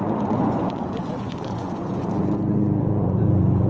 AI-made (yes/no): yes